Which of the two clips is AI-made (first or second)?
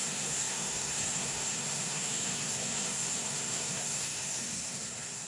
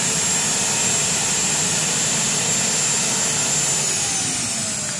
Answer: first